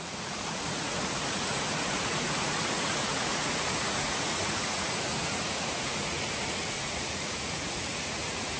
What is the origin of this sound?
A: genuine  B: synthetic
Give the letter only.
B